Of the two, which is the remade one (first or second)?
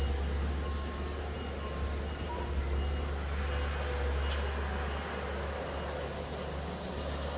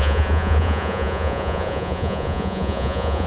second